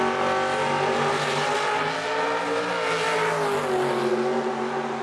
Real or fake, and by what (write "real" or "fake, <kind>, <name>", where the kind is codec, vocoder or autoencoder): real